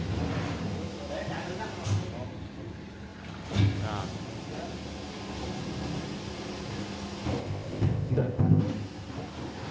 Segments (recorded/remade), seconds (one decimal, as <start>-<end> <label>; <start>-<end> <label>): 0.0-7.4 recorded; 7.4-8.6 remade; 8.6-9.7 recorded